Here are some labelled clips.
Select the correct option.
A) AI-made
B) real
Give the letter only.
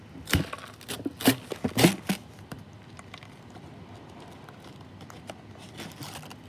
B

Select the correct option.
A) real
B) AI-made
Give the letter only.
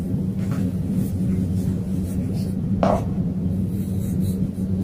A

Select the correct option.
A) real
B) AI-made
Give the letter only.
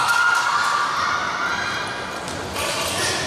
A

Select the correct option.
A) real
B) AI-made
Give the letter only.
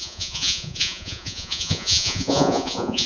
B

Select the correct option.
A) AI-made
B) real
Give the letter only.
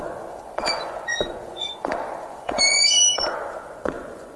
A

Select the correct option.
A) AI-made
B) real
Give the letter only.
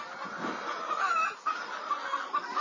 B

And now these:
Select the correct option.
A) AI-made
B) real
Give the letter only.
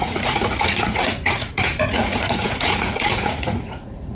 A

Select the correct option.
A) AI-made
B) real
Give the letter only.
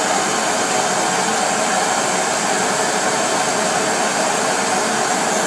B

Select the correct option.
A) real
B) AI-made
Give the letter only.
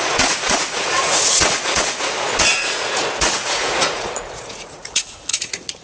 B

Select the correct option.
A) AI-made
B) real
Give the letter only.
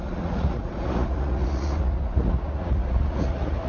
A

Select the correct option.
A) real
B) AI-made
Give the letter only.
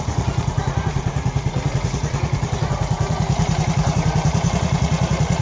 B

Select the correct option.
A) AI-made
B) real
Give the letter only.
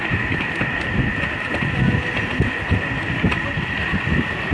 B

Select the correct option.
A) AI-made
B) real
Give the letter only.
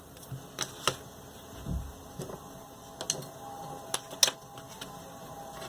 B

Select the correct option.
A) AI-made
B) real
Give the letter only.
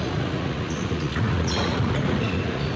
A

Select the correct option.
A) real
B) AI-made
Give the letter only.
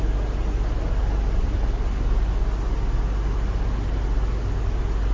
A